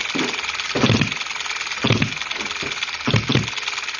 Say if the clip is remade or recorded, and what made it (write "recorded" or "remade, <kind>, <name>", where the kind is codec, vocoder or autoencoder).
recorded